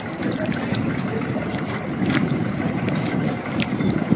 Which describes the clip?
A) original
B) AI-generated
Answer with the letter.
B